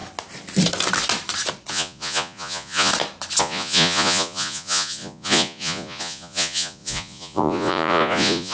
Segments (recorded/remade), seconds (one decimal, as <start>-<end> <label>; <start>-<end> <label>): 0.0-1.7 recorded; 1.7-2.9 remade; 2.9-3.4 recorded; 3.4-8.5 remade